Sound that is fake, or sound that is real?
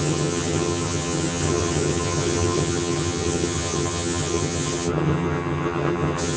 fake